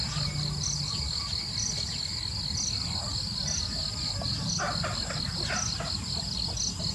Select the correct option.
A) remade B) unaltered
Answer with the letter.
B